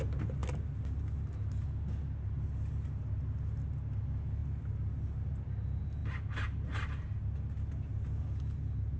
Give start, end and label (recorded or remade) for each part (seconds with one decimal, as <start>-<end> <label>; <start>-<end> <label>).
0.0-9.0 recorded